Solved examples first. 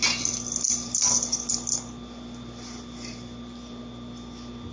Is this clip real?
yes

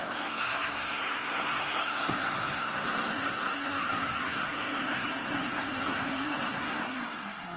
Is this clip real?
no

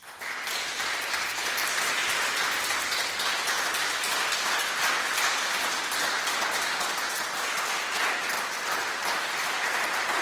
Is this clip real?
yes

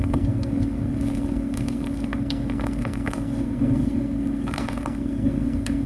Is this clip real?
no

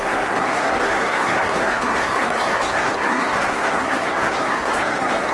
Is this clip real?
no